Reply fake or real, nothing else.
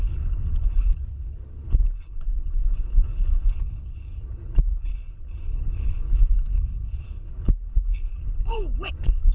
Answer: fake